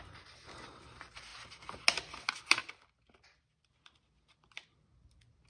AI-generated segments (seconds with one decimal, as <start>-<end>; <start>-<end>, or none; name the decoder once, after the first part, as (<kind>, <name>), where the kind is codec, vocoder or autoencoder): none